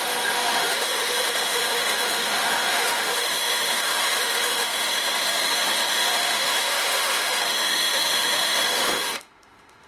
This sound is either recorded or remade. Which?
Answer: remade